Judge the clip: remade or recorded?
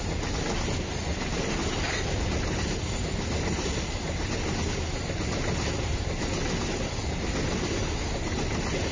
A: recorded